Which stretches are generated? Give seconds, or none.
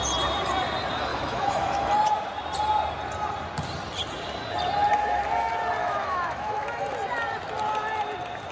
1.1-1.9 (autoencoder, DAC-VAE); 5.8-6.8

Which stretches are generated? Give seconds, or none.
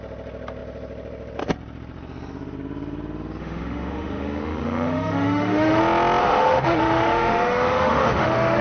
3.4-5.8 (autoencoder, DAC-VAE); 6.2-8.6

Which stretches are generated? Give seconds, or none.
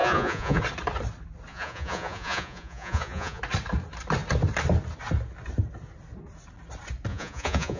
0.0-0.6 (vocoder, Vocos); 1.5-3.4; 7.1-7.8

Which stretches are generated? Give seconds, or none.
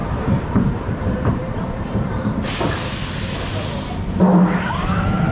0.0-3.0 (vocoder, BigVGAN v2)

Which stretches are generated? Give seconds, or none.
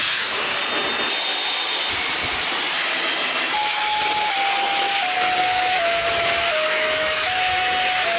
0.0-0.6 (autoencoder, DAC-VAE); 5.4-8.2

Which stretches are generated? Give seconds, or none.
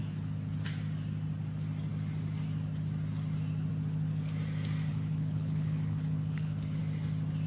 4.9-6.8 (codec, HILCodec)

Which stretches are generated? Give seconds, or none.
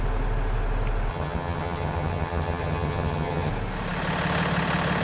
1.1-3.5 (vocoder, HiFi-GAN)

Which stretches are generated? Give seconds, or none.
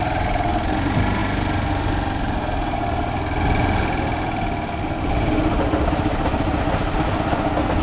none